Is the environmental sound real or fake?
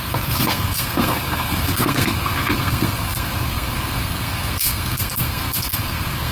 fake